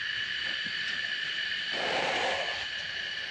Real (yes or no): yes